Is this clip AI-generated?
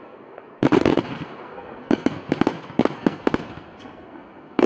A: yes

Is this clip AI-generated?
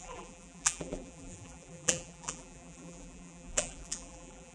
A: yes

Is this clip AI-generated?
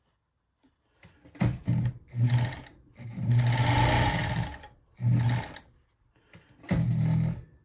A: no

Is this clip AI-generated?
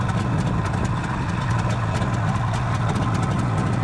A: no